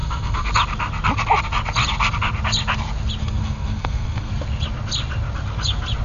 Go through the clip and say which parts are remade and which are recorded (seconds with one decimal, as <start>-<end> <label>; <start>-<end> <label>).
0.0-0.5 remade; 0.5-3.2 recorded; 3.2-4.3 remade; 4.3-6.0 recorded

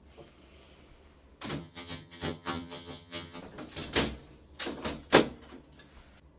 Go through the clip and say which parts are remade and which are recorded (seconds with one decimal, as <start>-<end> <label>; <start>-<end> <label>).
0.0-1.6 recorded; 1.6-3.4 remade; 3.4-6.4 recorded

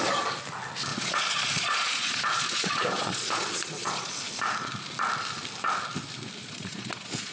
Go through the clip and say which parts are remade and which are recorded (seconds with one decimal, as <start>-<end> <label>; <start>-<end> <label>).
0.0-0.9 recorded; 0.9-4.1 remade; 4.1-6.4 recorded; 6.4-7.3 remade